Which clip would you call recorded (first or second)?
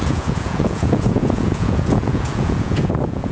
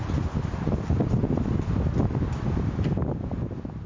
second